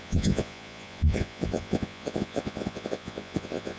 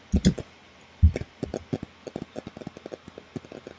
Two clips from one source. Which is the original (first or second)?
second